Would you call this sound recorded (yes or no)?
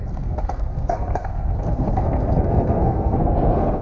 no